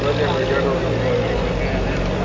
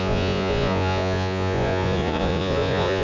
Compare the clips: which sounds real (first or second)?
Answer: first